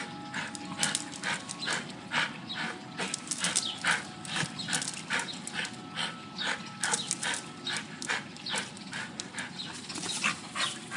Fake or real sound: real